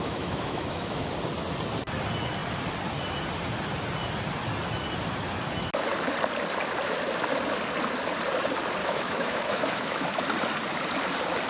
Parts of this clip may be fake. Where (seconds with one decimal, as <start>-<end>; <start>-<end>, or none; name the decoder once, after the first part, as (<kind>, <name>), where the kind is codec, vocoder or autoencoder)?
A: 0.0-1.1 (autoencoder, DAC-VAE); 8.8-10.2